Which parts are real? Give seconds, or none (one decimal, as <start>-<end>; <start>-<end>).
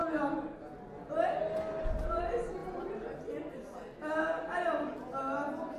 0.0-5.8